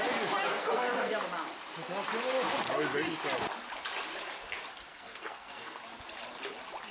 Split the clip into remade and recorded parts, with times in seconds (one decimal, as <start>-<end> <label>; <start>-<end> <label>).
0.0-0.5 recorded; 0.5-1.1 remade; 1.1-4.9 recorded; 4.9-5.8 remade; 5.8-6.9 recorded